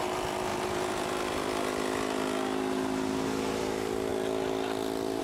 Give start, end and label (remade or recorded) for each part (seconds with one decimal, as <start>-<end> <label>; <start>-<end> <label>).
0.0-5.2 recorded